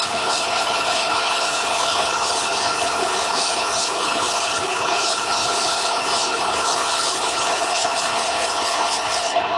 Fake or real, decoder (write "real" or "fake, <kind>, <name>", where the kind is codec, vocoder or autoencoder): fake, codec, HILCodec